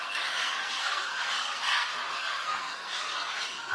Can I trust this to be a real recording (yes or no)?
no